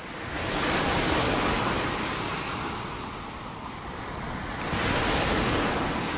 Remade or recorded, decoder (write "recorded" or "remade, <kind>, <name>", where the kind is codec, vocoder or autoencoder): recorded